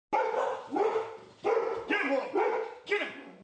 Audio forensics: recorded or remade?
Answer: recorded